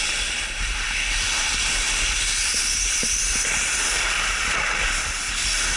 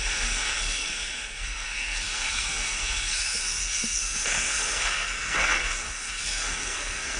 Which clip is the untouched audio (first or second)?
first